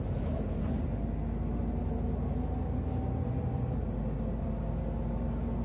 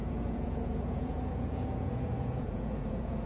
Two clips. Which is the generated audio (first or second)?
second